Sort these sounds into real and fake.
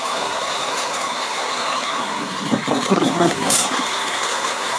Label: fake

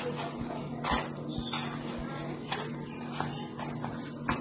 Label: real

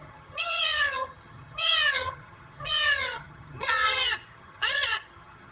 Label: fake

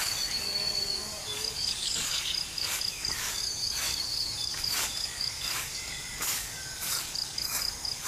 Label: fake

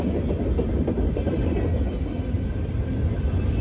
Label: real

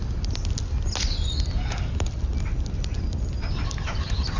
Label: real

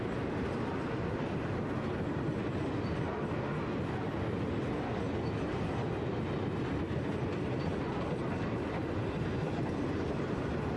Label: real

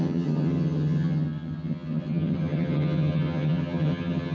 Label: fake